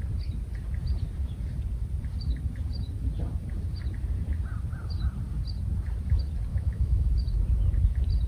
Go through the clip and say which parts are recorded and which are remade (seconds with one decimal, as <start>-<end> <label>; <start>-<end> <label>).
0.0-6.5 recorded; 6.5-7.1 remade; 7.1-8.3 recorded